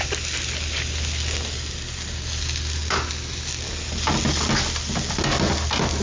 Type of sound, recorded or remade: recorded